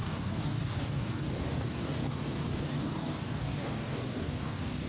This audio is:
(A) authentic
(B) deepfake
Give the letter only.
B